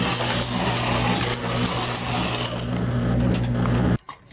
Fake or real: real